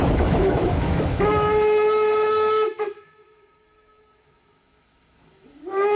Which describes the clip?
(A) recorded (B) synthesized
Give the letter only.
B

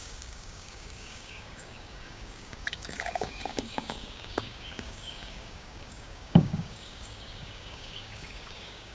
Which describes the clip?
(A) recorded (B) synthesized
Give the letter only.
B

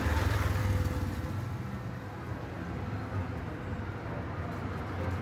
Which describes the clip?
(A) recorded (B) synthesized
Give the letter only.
A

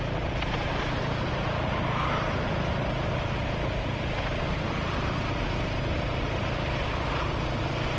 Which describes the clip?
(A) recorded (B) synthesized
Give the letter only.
A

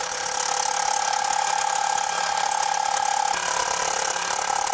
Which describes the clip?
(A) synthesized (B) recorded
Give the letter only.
B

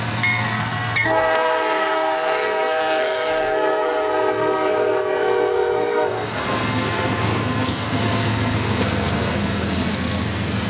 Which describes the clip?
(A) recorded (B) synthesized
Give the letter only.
B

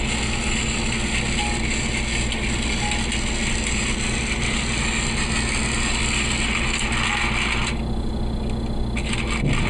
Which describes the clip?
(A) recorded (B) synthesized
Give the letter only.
A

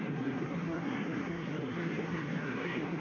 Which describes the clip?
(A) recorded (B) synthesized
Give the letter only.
B